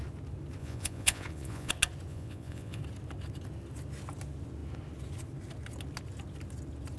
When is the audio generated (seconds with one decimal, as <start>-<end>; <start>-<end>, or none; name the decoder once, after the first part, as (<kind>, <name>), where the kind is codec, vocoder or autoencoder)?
0.6-1.7 (vocoder, Vocos); 2.1-2.8